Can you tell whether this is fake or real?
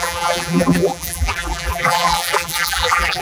fake